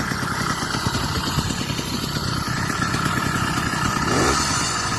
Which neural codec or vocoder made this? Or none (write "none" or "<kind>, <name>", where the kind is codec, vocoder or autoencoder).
vocoder, Vocos